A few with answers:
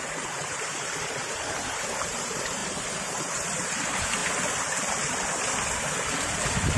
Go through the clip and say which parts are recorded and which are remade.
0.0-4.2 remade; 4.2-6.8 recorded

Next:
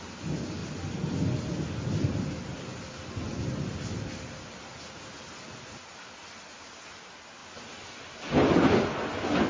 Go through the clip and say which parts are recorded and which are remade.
0.0-9.5 recorded

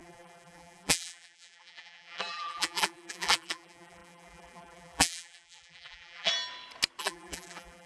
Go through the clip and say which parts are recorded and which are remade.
0.0-6.3 remade; 6.3-7.0 recorded; 7.0-7.9 remade

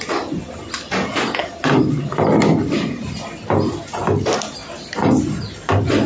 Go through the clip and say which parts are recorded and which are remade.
0.0-6.1 recorded

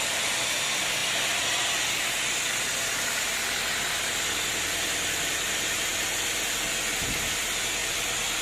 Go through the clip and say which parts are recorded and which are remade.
0.0-8.4 recorded

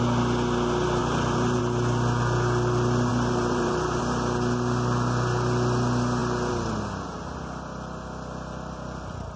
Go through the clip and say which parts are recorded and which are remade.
0.0-1.0 recorded; 1.0-1.6 remade; 1.6-3.1 recorded; 3.1-4.0 remade; 4.0-9.4 recorded

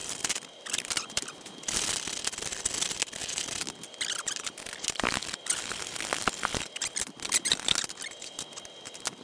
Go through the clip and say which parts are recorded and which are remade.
0.0-1.9 remade; 1.9-9.2 recorded

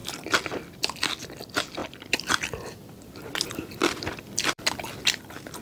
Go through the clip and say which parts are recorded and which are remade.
0.0-1.8 recorded; 1.8-5.0 remade; 5.0-5.6 recorded